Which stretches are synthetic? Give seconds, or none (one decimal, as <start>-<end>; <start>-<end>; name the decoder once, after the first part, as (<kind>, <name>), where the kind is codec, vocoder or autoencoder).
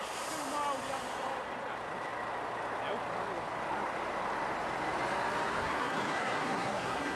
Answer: 5.6-7.2 (codec, SNAC)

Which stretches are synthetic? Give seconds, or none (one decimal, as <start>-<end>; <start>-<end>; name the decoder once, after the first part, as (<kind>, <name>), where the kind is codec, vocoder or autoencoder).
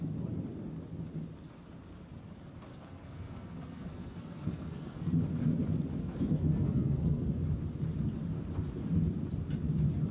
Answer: 2.7-5.2 (codec, SNAC); 6.0-7.4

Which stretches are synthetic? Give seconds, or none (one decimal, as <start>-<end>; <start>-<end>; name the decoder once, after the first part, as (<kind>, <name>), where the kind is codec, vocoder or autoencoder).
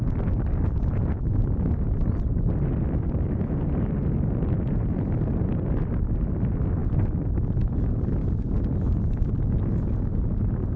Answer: none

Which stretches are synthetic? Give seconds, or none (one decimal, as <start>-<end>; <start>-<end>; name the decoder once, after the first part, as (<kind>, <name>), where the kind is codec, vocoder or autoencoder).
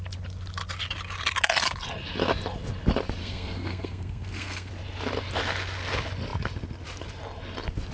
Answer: 3.2-4.7 (codec, SNAC)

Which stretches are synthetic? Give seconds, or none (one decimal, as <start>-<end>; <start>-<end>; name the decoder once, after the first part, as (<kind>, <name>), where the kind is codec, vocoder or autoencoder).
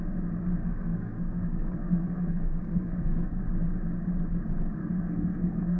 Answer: 0.6-3.3 (codec, SNAC); 4.8-5.8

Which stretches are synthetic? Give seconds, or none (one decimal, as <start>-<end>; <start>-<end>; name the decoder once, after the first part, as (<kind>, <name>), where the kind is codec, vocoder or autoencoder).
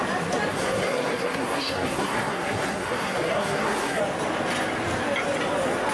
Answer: 0.5-4.0 (codec, SNAC)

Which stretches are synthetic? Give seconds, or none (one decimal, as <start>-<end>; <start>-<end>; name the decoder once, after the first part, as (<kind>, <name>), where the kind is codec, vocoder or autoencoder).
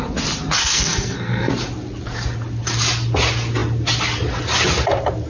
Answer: 0.6-1.5 (codec, SNAC)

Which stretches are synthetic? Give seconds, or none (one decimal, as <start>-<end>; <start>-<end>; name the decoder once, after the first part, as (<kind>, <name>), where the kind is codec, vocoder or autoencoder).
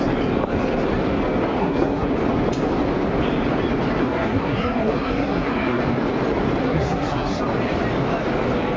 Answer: 1.6-2.1 (codec, SNAC); 4.0-5.8; 6.6-7.4